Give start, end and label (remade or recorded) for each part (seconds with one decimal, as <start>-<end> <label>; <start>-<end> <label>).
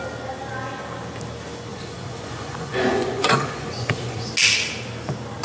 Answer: 0.0-1.7 recorded; 1.7-4.3 remade; 4.3-5.4 recorded